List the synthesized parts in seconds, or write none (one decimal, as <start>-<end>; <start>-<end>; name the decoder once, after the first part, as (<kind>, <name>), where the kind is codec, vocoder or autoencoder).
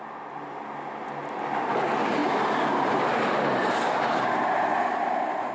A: none